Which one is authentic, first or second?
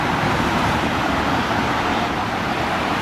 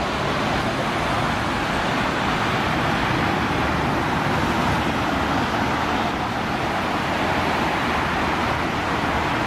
second